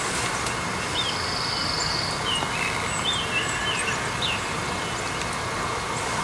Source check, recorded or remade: recorded